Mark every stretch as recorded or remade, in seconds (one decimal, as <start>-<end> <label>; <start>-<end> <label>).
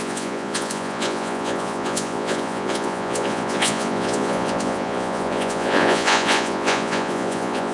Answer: 0.0-7.7 remade